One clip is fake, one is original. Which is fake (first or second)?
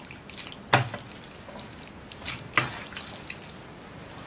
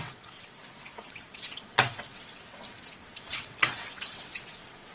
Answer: second